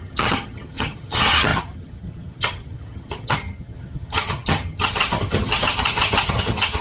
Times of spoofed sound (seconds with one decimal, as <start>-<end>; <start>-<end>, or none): 0.0-6.8